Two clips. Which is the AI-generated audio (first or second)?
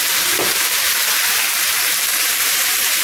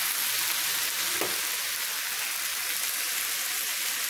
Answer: first